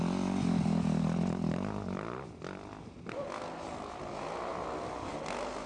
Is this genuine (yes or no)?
yes